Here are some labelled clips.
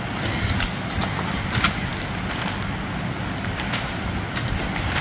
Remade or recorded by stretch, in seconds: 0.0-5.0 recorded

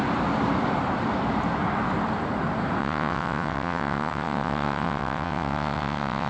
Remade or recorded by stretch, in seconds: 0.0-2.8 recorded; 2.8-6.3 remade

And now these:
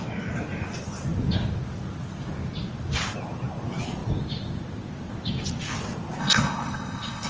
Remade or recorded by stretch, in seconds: 0.0-6.2 recorded; 6.2-7.3 remade